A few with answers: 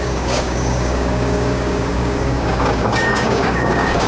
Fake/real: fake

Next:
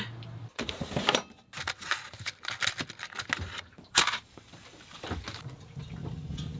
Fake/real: real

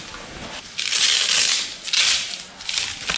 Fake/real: real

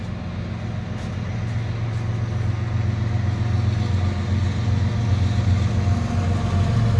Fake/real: real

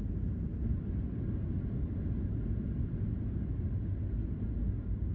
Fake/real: real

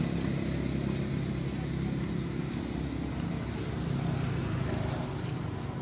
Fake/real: real